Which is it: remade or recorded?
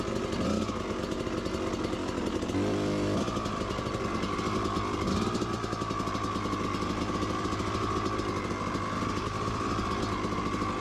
recorded